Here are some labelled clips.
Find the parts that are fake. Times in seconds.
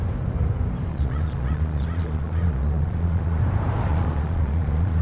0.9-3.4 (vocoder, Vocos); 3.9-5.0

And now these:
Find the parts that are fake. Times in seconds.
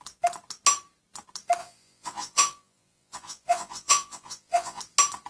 1.6-4.8 (vocoder, Vocos)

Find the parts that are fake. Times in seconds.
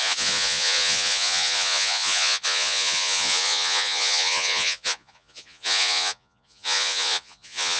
0.0-7.8 (vocoder, Vocos)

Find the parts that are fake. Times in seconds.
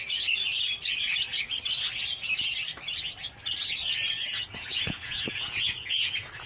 4.3-6.5 (vocoder, Vocos)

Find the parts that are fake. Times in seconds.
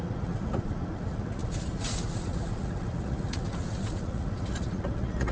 0.0-5.3 (vocoder, Vocos)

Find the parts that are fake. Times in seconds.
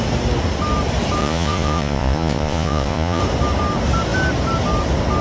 1.2-3.2 (vocoder, Vocos)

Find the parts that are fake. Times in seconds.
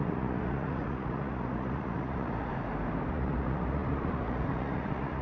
0.0-2.5 (vocoder, Vocos); 3.1-5.2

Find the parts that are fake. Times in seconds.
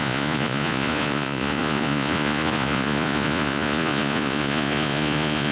0.0-5.5 (vocoder, Vocos)